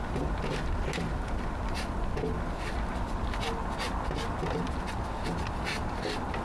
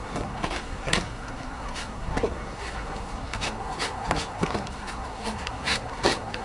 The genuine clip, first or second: first